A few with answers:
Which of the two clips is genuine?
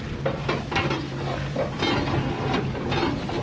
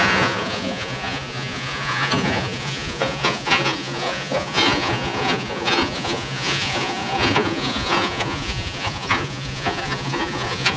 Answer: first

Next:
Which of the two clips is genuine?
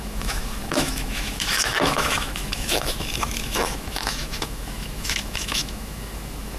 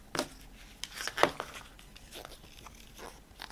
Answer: second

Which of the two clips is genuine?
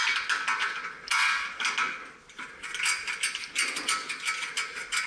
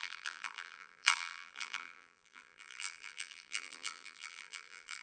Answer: first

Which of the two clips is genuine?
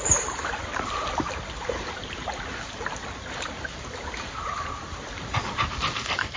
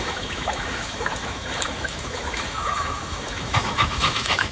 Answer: first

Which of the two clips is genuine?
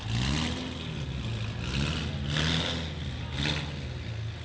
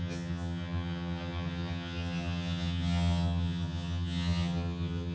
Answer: first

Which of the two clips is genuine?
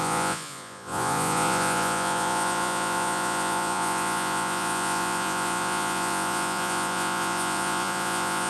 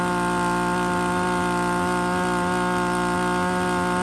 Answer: second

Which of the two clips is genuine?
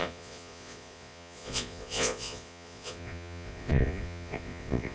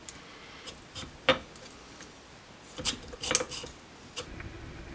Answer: second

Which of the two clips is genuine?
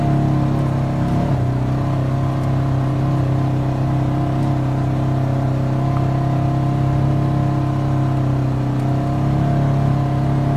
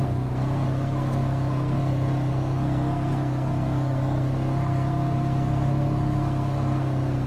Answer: first